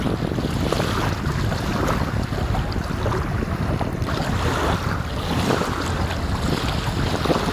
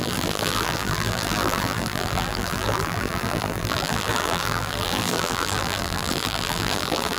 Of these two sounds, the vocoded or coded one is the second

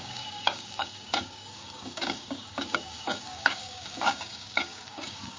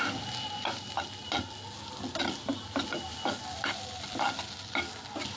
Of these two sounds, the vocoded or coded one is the first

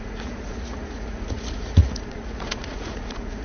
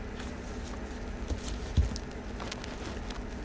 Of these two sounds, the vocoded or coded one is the first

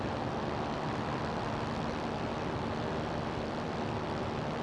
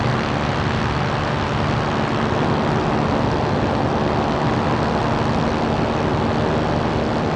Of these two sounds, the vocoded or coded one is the first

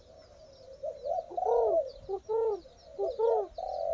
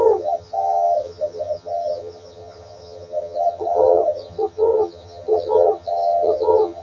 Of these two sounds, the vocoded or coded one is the second